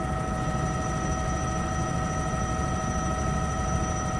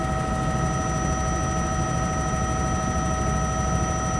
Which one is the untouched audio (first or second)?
second